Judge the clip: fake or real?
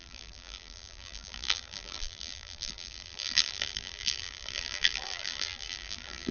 fake